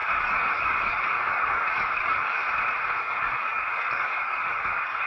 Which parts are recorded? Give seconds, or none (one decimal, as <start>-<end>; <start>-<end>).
2.4-3.0